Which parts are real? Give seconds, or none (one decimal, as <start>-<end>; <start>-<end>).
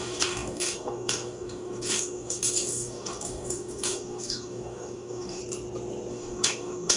5.4-6.1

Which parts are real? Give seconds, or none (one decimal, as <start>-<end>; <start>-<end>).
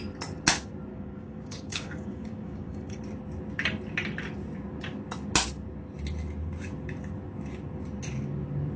0.0-0.9; 3.0-8.8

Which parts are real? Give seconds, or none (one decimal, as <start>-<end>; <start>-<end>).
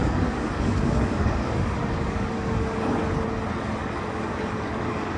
3.0-3.8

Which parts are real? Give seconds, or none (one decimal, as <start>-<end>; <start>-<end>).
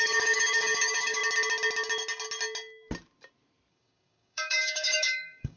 1.2-3.7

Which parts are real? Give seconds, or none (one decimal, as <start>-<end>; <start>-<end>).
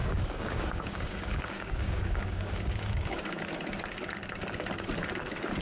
3.4-5.6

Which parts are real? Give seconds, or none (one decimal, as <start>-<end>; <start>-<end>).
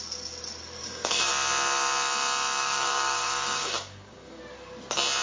0.0-0.8; 1.3-2.6; 4.4-5.2